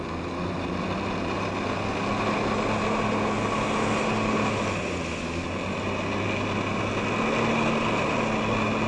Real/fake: real